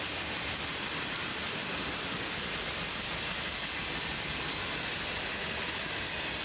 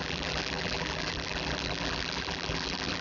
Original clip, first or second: first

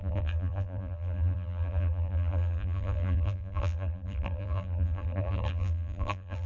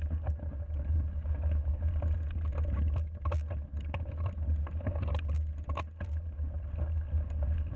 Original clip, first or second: second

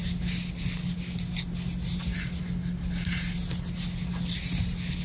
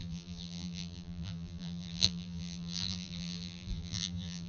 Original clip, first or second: first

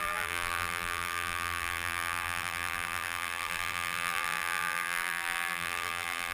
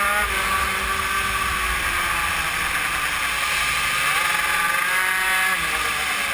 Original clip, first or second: second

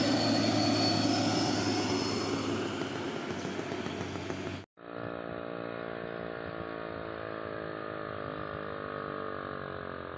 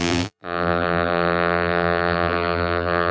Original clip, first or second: first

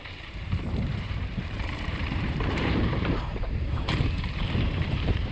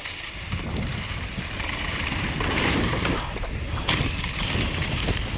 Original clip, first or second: second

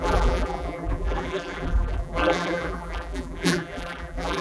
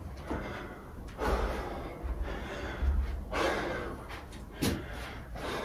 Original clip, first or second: second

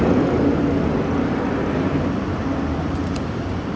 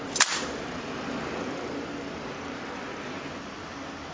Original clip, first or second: second